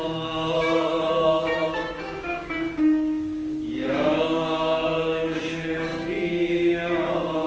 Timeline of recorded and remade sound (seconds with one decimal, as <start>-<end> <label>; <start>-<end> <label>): 0.0-7.5 remade